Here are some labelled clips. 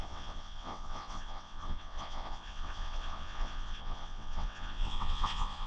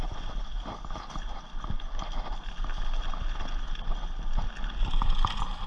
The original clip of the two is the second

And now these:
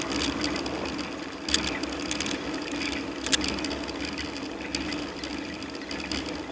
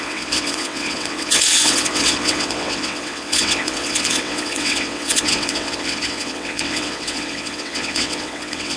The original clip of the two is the first